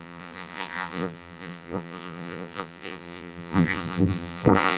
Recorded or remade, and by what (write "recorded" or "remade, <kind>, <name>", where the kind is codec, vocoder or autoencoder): remade, vocoder, BigVGAN v2